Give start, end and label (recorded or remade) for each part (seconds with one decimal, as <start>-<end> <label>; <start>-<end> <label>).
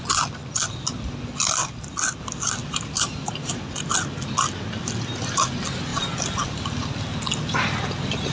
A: 0.0-2.6 recorded; 2.6-3.7 remade; 3.7-8.3 recorded